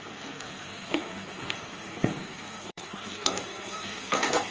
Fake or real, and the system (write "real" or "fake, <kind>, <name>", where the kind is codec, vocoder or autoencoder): fake, codec, SNAC